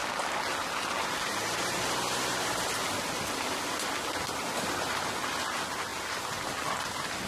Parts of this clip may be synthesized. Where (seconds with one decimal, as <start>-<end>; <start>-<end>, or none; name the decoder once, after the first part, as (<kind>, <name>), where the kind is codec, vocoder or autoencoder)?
none